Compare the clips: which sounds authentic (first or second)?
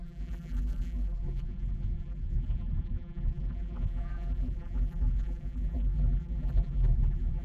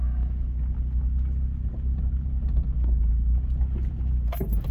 second